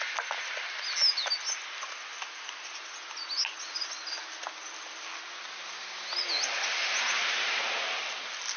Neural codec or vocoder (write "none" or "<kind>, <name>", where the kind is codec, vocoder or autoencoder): none